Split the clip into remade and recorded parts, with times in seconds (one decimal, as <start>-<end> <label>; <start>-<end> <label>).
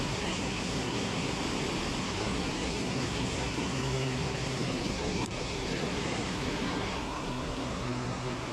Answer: 0.0-1.4 remade; 1.4-2.0 recorded; 2.0-8.5 remade